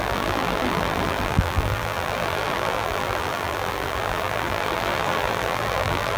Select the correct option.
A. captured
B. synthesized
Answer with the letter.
B